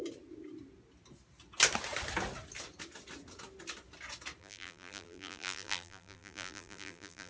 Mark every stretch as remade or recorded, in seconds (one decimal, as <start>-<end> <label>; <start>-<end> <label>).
0.0-4.4 recorded; 4.4-7.3 remade